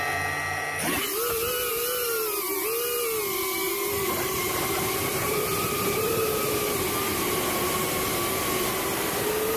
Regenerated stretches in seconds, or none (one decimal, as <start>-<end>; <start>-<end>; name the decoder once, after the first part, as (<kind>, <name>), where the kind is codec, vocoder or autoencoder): 5.1-6.4 (vocoder, BigVGAN v2); 7.1-7.6